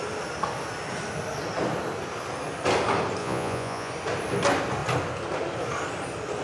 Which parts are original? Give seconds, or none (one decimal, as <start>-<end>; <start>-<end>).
0.0-3.2; 3.9-6.4